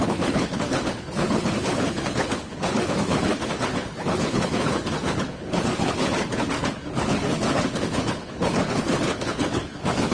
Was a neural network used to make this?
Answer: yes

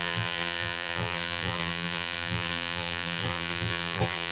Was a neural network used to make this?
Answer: yes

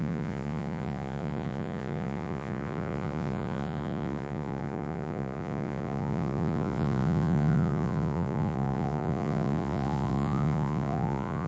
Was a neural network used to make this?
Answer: yes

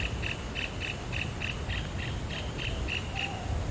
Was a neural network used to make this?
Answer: no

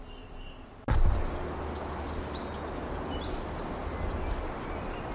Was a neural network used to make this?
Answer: no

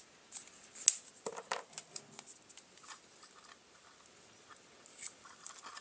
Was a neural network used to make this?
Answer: no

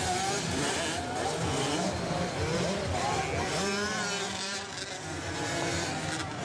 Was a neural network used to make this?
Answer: no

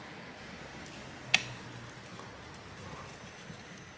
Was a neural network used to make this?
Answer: no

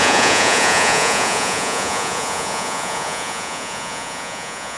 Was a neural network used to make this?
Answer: yes